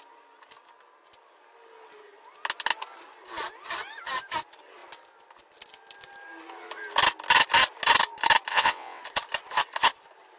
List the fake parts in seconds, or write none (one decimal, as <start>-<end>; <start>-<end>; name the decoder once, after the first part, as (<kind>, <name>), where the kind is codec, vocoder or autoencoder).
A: 8.5-9.0 (vocoder, WaveNeXt)